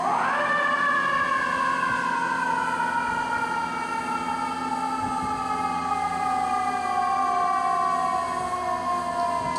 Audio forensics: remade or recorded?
recorded